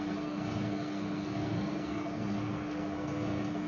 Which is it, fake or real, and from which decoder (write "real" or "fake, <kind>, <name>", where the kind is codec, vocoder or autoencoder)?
fake, codec, SNAC